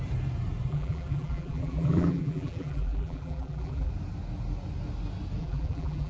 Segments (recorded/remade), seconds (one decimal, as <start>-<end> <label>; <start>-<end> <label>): 0.0-0.7 recorded; 0.7-3.9 remade; 3.9-5.4 recorded; 5.4-6.1 remade